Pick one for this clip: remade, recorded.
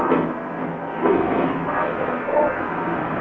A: remade